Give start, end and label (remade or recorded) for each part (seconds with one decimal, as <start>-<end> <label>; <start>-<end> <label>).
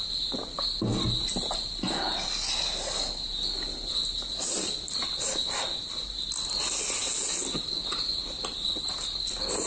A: 0.0-9.7 recorded